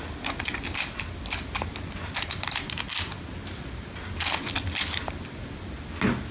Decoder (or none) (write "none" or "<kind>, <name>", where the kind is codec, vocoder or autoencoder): none